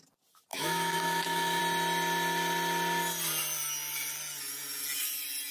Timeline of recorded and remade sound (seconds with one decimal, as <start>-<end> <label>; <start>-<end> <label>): 0.0-0.5 recorded; 0.5-1.6 remade; 1.6-5.5 recorded